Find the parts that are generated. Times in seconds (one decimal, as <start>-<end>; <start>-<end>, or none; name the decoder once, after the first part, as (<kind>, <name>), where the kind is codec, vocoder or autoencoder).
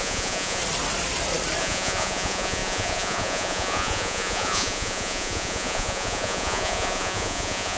0.0-0.6 (vocoder, Vocos); 1.6-7.8